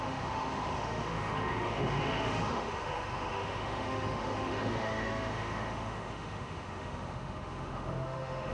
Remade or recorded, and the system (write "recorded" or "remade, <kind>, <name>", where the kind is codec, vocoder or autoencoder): remade, autoencoder, DAC-VAE